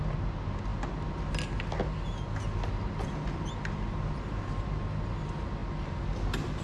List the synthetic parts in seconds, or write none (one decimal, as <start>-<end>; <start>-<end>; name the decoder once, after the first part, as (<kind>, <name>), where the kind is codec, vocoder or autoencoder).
none